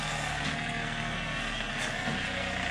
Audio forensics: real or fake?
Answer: fake